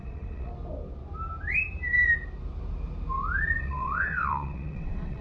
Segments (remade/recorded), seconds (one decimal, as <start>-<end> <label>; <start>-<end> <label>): 0.0-0.5 remade; 0.5-3.6 recorded; 3.6-5.2 remade